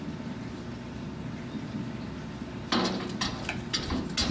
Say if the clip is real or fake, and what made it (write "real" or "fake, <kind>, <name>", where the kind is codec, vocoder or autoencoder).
real